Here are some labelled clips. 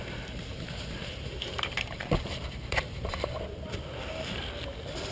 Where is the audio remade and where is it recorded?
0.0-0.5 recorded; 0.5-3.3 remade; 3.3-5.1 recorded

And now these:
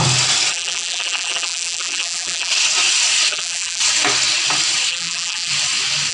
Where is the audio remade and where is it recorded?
0.0-0.5 recorded; 0.5-2.5 remade; 2.5-3.3 recorded; 3.3-3.8 remade; 3.8-4.9 recorded; 4.9-5.5 remade; 5.5-6.1 recorded

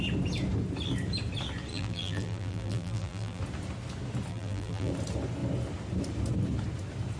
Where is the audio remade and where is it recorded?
0.0-1.7 recorded; 1.7-3.4 remade; 3.4-4.3 recorded; 4.3-4.9 remade; 4.9-7.2 recorded

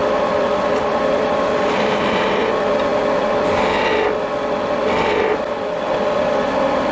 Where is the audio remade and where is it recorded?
0.0-2.4 remade; 2.4-6.9 recorded